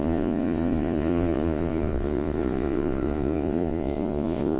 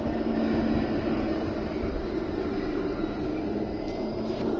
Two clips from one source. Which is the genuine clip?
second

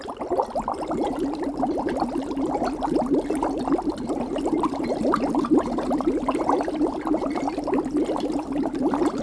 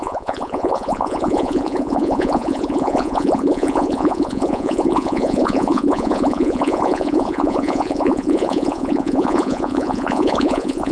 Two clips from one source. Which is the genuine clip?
first